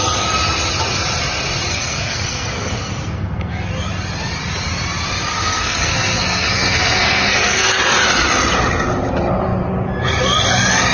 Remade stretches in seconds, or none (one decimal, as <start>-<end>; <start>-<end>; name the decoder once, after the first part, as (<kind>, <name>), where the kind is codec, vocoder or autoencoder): 1.7-3.7 (codec, SNAC); 5.3-7.8